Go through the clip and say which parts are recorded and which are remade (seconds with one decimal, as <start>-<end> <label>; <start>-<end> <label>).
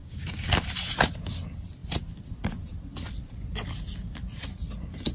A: 0.0-0.6 remade; 0.6-5.1 recorded